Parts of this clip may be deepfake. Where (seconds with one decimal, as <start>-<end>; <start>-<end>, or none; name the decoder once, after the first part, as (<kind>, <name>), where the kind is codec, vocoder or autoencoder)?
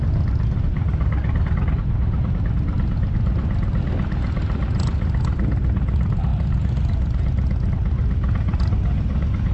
none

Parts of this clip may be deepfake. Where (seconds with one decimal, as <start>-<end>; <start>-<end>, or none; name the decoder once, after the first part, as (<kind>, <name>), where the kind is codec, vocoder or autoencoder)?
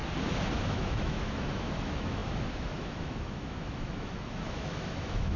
0.7-5.4 (autoencoder, DAC-VAE)